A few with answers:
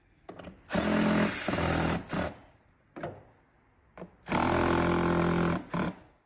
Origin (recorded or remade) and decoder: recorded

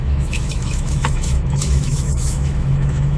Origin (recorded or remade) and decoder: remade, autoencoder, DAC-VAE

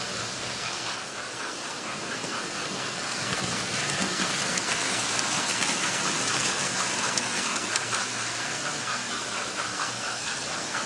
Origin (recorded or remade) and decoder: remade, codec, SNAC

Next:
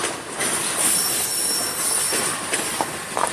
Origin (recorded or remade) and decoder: recorded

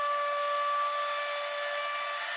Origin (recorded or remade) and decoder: recorded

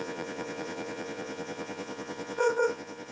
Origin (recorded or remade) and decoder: remade, vocoder, Vocos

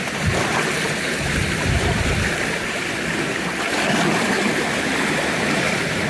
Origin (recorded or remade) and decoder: remade, vocoder, BigVGAN v2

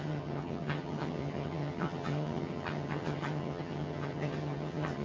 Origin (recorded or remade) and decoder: remade, vocoder, HiFi-GAN